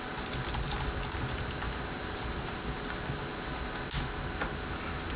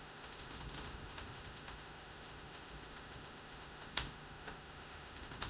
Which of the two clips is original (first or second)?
first